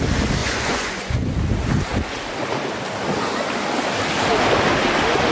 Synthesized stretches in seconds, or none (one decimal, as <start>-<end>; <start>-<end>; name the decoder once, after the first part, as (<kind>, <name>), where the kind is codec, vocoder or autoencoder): 0.4-1.3 (vocoder, Vocos)